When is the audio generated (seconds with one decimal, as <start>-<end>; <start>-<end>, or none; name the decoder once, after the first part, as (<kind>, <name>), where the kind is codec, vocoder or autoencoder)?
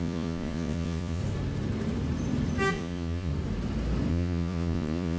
0.0-1.2 (vocoder, Vocos); 2.7-3.3; 4.1-5.2